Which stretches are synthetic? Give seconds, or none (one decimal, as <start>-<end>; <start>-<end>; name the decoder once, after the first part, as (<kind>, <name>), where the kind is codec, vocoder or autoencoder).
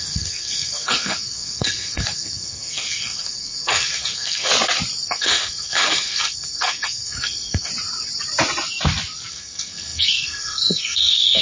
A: 0.0-4.5 (codec, SNAC); 5.0-7.7; 9.3-11.4